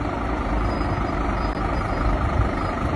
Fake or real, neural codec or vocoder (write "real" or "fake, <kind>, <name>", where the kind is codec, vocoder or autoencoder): fake, vocoder, BigVGAN v2